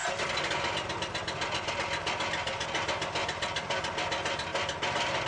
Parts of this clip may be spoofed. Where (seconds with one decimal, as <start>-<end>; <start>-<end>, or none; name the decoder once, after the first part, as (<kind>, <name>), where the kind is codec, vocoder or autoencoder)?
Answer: none